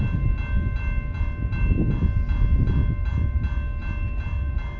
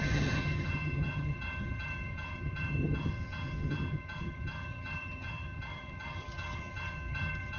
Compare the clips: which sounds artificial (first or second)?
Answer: second